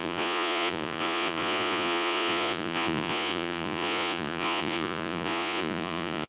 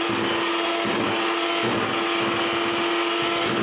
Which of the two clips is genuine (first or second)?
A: second